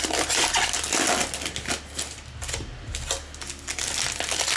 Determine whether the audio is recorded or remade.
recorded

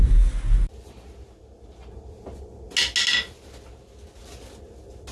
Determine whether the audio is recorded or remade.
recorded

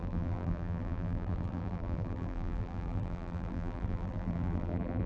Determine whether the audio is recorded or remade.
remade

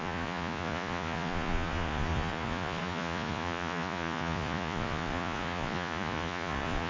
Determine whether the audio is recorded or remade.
remade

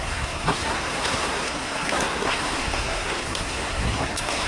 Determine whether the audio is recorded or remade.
remade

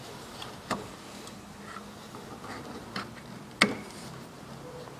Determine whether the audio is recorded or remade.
recorded